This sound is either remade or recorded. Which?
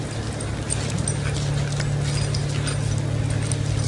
recorded